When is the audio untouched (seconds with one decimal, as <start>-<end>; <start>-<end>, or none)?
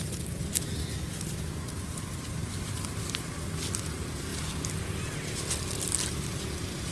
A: 0.0-6.9